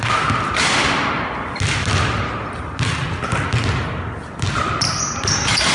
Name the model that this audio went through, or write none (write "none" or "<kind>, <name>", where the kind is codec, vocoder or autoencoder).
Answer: none